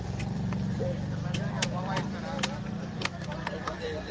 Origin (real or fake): fake